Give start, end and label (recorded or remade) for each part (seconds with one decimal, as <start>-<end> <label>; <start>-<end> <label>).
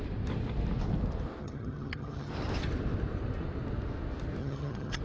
0.0-1.4 recorded; 1.4-2.3 remade; 2.3-4.4 recorded; 4.4-5.0 remade